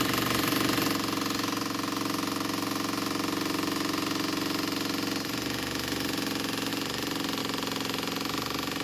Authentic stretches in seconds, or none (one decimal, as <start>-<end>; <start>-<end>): 0.0-8.8